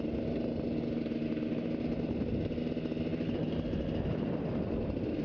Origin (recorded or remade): recorded